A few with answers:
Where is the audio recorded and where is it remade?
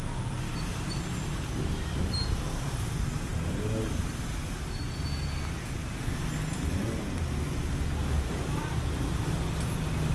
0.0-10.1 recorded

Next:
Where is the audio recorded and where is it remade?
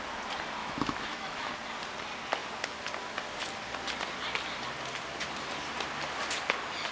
0.0-0.6 recorded; 0.6-1.5 remade; 1.5-6.9 recorded